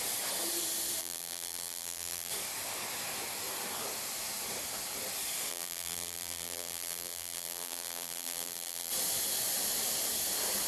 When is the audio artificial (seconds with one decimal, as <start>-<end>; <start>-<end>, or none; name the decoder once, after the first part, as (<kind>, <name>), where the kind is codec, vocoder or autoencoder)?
1.0-2.3 (vocoder, BigVGAN v2); 5.5-8.9